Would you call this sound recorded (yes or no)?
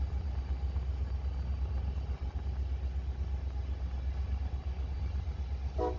yes